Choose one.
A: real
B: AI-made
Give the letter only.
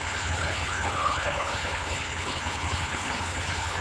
B